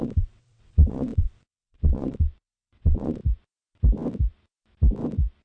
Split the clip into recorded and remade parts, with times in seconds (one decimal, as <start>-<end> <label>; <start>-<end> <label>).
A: 0.0-3.2 remade; 3.2-5.4 recorded